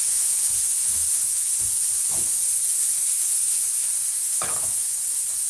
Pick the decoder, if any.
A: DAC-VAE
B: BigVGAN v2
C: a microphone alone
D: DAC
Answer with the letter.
A